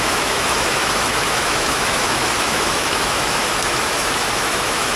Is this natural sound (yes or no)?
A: no